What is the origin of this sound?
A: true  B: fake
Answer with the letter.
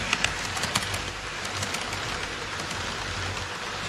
A